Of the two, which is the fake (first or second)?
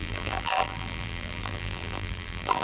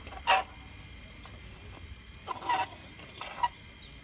first